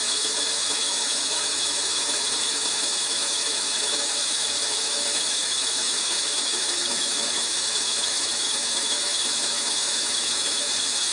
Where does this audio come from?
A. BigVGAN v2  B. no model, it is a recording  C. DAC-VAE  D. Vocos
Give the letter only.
C